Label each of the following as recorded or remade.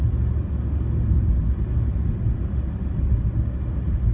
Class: recorded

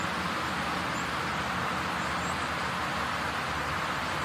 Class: recorded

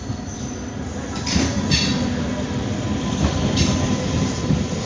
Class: recorded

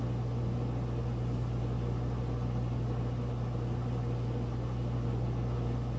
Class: recorded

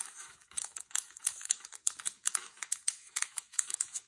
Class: remade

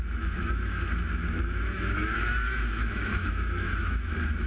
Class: remade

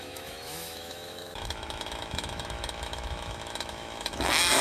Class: remade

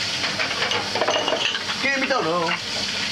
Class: recorded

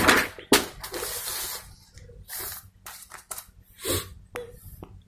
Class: recorded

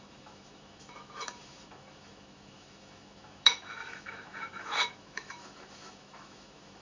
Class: remade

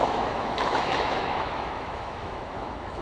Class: remade